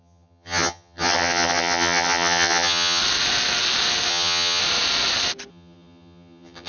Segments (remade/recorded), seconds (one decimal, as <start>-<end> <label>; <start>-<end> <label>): 0.0-3.0 remade; 3.0-4.1 recorded; 4.1-4.6 remade; 4.6-5.5 recorded; 5.5-6.7 remade